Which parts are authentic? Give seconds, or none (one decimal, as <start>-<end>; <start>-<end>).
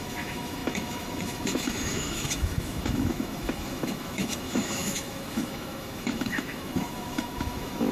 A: none